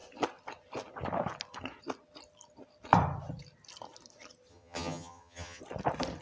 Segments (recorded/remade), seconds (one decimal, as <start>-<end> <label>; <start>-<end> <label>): 0.0-4.5 recorded; 4.5-5.6 remade; 5.6-6.2 recorded